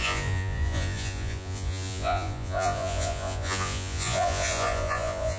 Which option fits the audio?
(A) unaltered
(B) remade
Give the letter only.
B